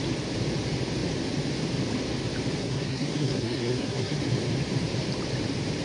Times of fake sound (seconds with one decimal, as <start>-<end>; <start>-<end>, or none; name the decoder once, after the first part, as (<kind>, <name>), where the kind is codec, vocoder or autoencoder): 2.6-4.2 (codec, SNAC)